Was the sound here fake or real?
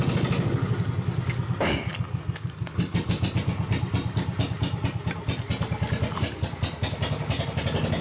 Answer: real